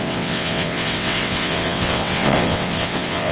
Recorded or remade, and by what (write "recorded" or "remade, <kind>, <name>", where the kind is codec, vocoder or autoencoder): remade, vocoder, WaveNeXt